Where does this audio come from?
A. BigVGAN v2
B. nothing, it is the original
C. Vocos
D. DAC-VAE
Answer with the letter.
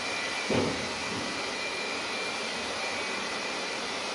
A